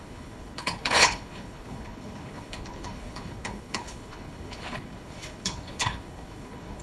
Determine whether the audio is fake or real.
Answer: fake